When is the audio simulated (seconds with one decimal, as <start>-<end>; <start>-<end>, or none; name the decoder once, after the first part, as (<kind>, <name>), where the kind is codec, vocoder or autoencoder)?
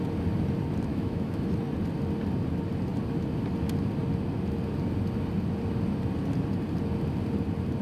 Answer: 0.9-1.5 (autoencoder, DAC-VAE)